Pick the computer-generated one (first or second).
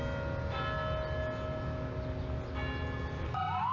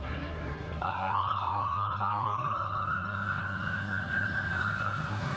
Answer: second